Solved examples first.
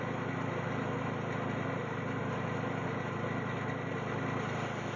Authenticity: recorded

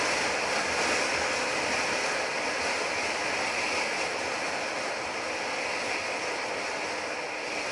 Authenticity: recorded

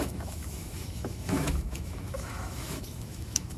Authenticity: remade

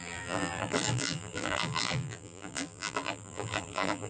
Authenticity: remade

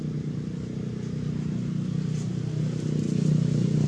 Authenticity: recorded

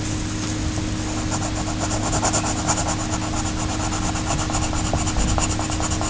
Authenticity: recorded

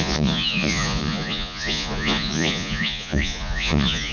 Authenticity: remade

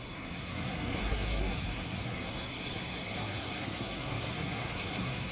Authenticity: remade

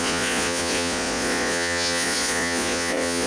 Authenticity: remade